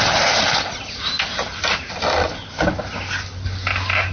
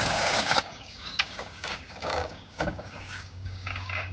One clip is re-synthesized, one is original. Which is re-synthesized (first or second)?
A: second